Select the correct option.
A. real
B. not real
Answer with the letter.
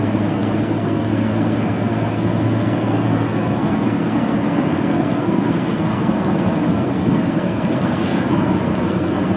B